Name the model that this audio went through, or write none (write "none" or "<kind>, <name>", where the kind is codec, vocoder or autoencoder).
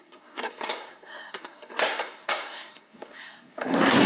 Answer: codec, SNAC